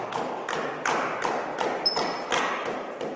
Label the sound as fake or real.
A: real